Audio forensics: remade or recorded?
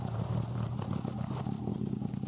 recorded